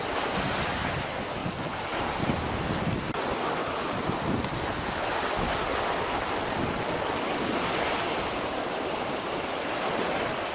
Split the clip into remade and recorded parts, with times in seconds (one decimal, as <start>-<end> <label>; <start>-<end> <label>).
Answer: 0.0-10.5 recorded